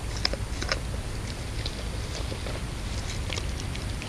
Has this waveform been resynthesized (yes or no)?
no